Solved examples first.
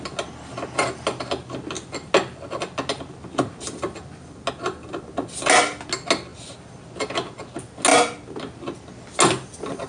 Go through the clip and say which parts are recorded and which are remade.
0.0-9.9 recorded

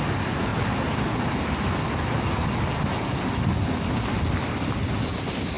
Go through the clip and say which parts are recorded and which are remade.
0.0-5.6 recorded

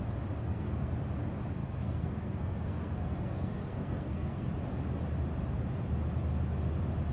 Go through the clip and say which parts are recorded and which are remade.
0.0-0.4 recorded; 0.4-0.9 remade; 0.9-1.6 recorded; 1.6-4.5 remade; 4.5-7.1 recorded

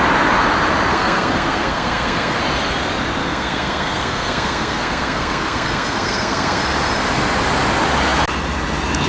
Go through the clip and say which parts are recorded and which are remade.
0.0-0.9 recorded; 0.9-2.4 remade; 2.4-3.2 recorded; 3.2-6.6 remade; 6.6-9.1 recorded

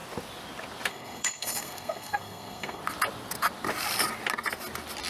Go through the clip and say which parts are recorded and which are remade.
0.0-0.9 recorded; 0.9-2.8 remade; 2.8-5.1 recorded

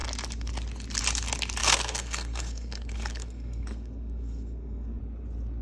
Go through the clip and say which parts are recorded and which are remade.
0.0-1.6 recorded; 1.6-5.0 remade; 5.0-5.6 recorded

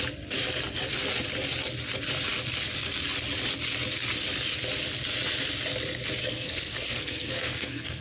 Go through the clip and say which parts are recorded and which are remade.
0.0-6.2 recorded; 6.2-8.0 remade